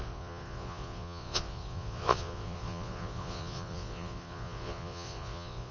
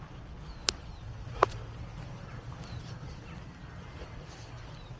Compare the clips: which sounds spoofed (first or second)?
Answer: first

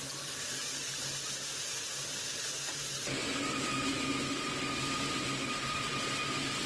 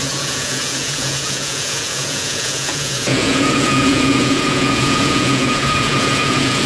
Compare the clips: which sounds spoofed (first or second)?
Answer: second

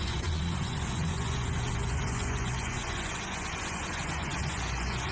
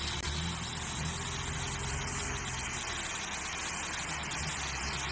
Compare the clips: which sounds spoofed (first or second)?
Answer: first